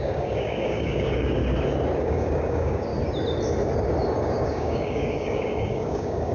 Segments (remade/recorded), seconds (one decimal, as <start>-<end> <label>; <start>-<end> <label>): 0.0-1.4 remade; 1.4-2.0 recorded; 2.0-2.9 remade; 2.9-4.2 recorded; 4.2-6.3 remade